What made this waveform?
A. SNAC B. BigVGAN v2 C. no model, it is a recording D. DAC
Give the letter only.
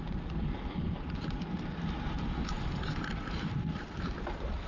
C